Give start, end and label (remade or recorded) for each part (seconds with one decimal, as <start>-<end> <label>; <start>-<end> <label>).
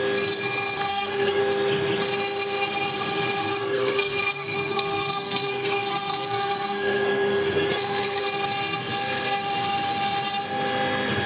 0.0-0.9 recorded; 0.9-1.4 remade; 1.4-3.5 recorded; 3.5-8.2 remade; 8.2-11.3 recorded